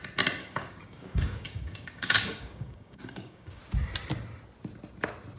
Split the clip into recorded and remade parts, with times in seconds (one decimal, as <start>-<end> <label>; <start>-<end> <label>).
0.0-0.4 recorded; 0.4-3.6 remade; 3.6-5.4 recorded